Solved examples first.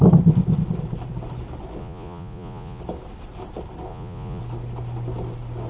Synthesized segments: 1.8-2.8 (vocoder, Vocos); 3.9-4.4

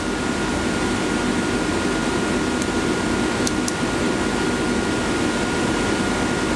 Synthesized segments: none

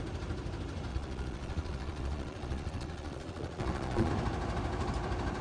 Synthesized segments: 0.9-4.1 (vocoder, Vocos)

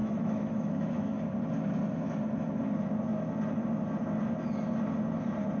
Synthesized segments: 0.0-1.2 (autoencoder, DAC-VAE)

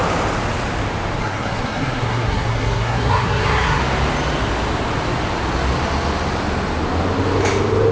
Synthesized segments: 1.2-3.8 (codec, SNAC)

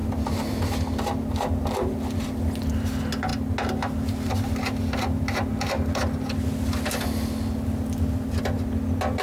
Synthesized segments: none